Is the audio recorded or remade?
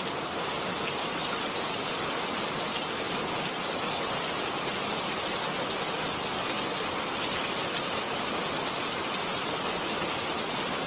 recorded